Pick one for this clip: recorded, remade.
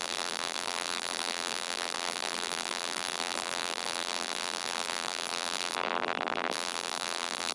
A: remade